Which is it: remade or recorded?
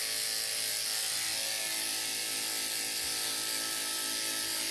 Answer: recorded